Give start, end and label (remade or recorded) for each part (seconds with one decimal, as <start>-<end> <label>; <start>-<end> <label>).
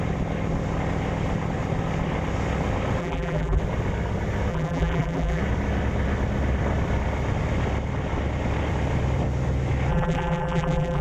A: 0.0-3.0 recorded; 3.0-3.6 remade; 3.6-4.5 recorded; 4.5-5.4 remade; 5.4-9.9 recorded; 9.9-11.0 remade